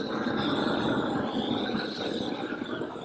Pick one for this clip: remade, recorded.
recorded